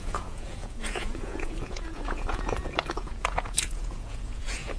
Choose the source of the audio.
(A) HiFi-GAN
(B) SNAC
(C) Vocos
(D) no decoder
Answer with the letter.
C